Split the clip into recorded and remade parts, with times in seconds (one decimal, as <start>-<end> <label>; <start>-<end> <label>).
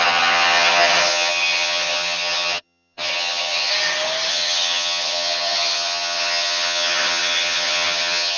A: 0.0-3.7 remade; 3.7-4.3 recorded; 4.3-8.4 remade